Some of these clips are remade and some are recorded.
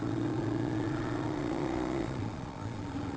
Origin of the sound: remade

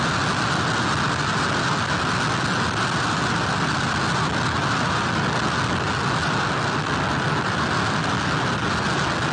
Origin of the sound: recorded